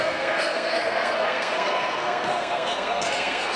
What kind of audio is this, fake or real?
fake